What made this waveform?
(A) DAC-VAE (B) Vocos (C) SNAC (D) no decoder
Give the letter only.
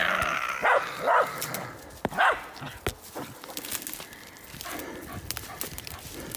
D